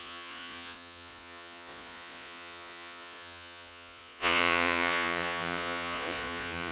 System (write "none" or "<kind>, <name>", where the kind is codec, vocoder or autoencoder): vocoder, Vocos